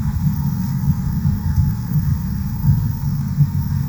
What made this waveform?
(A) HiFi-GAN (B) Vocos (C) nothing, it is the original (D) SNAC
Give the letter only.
D